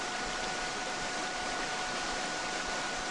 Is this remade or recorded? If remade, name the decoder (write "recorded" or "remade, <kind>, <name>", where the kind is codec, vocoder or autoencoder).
remade, vocoder, BigVGAN v2